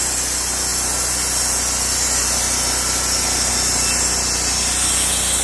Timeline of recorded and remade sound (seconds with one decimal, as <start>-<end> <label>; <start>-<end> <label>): 0.0-5.4 recorded